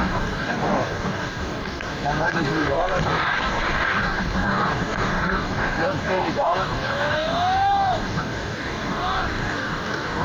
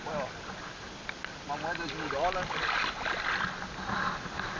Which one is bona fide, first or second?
second